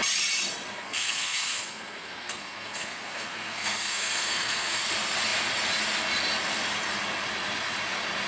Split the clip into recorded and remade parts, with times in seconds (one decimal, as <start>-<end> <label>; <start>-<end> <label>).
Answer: 0.0-0.7 recorded; 0.7-4.8 remade; 4.8-8.3 recorded